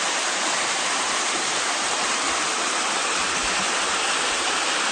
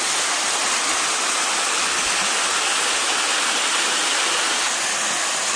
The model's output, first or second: first